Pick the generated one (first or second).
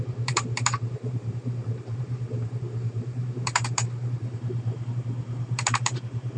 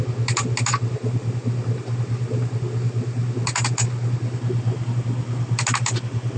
first